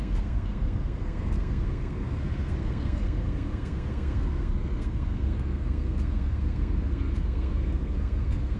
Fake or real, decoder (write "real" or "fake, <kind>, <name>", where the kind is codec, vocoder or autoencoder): fake, codec, SNAC